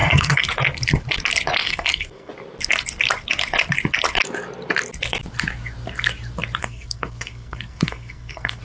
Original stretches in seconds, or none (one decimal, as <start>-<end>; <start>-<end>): 0.5-1.6; 2.3-6.6